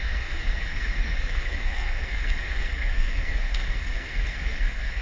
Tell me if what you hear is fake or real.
fake